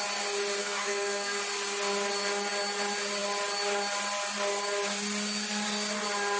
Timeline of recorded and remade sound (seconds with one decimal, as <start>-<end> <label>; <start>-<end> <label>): 0.0-0.6 recorded; 0.6-1.4 remade; 1.4-6.4 recorded